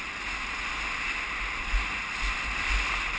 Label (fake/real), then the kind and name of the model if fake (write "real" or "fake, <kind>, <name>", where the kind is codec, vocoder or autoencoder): real